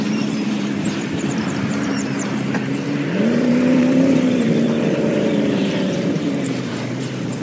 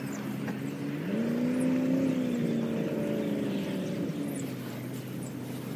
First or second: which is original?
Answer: second